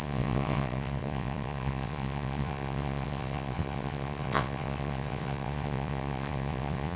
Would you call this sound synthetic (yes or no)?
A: yes